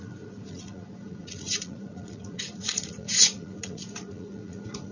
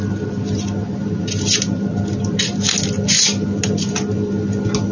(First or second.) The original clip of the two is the second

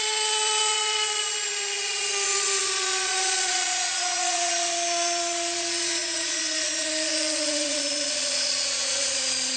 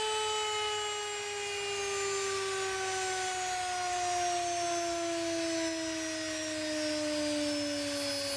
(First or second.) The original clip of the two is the second